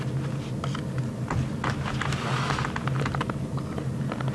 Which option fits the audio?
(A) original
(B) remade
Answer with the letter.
A